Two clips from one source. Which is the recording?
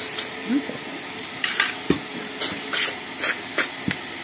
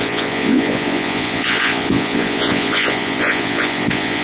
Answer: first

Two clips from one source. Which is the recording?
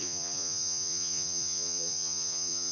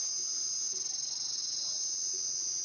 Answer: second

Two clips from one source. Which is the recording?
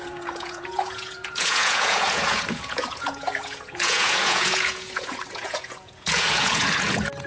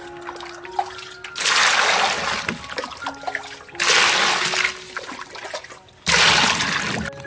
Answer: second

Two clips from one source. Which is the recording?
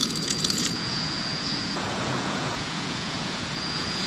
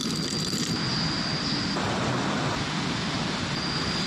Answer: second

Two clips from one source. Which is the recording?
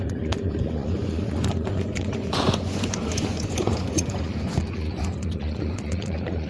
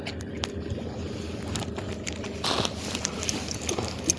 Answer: second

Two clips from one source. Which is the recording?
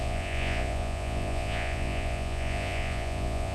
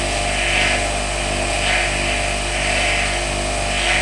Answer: second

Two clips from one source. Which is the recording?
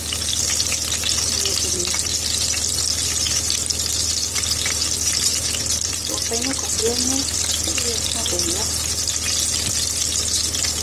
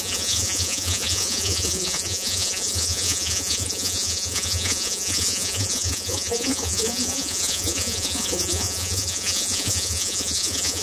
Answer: first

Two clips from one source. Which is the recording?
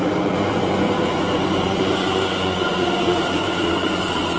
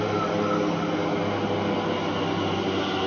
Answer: second